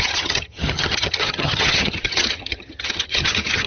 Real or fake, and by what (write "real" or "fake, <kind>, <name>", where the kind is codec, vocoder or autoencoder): fake, vocoder, HiFi-GAN